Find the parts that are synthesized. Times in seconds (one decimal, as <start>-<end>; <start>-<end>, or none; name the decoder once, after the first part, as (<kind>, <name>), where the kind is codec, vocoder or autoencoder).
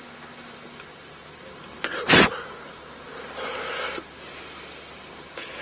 none